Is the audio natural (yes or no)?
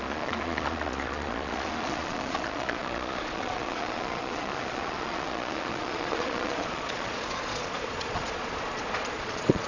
no